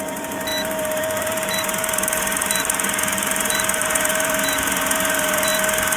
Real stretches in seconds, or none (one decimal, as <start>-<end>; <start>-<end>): 5.5-6.0